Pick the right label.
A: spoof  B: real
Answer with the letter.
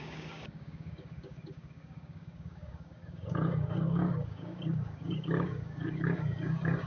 A